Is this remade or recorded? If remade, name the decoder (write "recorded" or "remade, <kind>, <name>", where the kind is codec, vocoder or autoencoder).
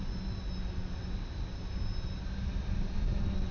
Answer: recorded